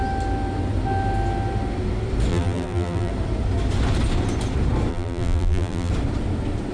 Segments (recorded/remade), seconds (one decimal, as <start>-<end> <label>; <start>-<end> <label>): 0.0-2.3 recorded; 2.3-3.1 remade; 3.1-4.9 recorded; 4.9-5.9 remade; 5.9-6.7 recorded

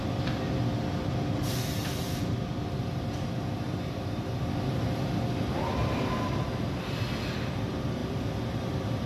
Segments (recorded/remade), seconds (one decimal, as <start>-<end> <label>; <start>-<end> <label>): 0.0-5.3 remade; 5.3-8.0 recorded; 8.0-8.7 remade; 8.7-9.1 recorded

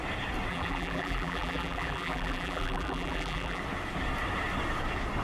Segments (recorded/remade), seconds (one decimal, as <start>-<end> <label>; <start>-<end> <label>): 0.0-0.5 recorded; 0.5-3.6 remade; 3.6-5.2 recorded

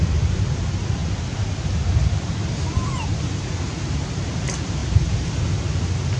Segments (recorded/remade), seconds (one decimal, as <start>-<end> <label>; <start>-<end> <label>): 0.0-1.0 remade; 1.0-2.6 recorded; 2.6-4.8 remade; 4.8-6.2 recorded

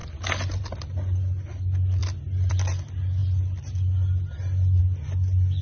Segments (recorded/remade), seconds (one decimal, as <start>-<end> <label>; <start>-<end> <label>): 0.0-5.6 recorded

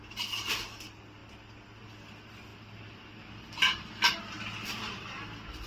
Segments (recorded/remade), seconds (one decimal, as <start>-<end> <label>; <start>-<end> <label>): 0.0-5.7 recorded

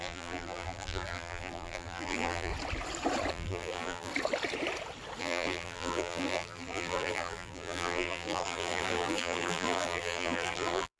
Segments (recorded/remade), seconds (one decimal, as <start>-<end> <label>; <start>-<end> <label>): 0.0-2.5 remade; 2.5-3.3 recorded; 3.3-4.1 remade; 4.1-5.2 recorded; 5.2-11.0 remade